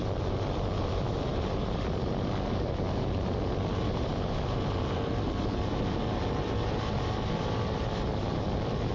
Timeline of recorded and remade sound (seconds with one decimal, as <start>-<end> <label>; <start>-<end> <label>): 0.0-8.9 recorded